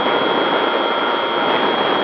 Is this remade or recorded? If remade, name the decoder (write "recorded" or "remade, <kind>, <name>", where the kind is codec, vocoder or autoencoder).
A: recorded